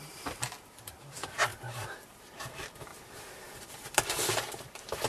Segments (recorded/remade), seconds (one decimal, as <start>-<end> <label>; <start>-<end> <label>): 0.0-2.9 remade; 2.9-4.3 recorded; 4.3-5.1 remade